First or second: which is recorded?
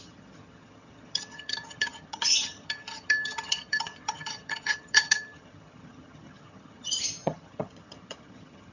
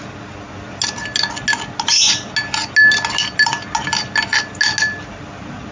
second